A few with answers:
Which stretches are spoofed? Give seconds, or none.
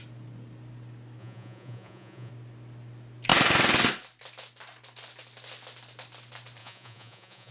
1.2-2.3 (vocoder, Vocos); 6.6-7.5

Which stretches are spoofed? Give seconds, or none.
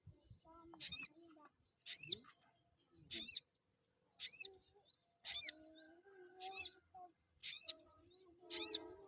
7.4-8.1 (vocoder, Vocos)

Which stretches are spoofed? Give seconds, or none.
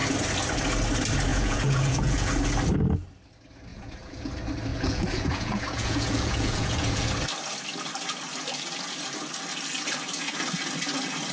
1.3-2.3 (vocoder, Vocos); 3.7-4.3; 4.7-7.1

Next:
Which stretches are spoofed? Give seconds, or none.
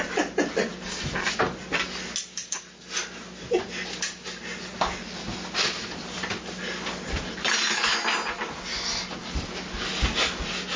none